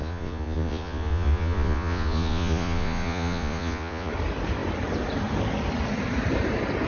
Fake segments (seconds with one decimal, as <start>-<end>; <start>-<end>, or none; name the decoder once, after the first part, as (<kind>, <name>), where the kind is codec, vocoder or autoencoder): 0.0-4.1 (vocoder, Vocos)